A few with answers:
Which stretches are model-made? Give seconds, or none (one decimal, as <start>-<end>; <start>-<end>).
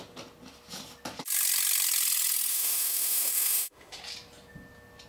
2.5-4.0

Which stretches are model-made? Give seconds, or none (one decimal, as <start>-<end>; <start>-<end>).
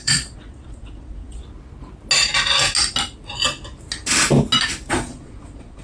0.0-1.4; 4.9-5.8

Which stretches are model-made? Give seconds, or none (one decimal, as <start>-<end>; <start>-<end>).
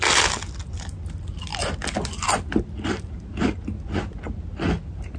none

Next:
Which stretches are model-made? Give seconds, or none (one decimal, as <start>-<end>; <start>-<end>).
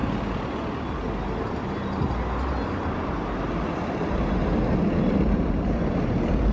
3.9-4.4; 5.0-6.5